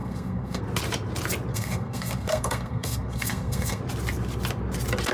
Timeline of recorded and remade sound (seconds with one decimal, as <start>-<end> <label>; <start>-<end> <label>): 0.0-0.6 remade; 0.6-1.5 recorded; 1.5-3.8 remade; 3.8-5.1 recorded